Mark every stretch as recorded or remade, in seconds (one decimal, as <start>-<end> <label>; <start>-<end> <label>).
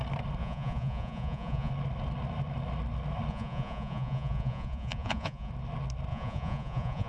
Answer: 0.0-0.4 recorded; 0.4-1.7 remade; 1.7-3.3 recorded; 3.3-5.5 remade; 5.5-6.1 recorded; 6.1-7.1 remade